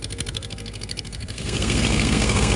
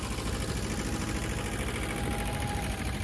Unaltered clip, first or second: second